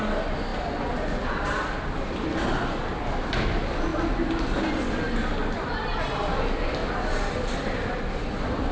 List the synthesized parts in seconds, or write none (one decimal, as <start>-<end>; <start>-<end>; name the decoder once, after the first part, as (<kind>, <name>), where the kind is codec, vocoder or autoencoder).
none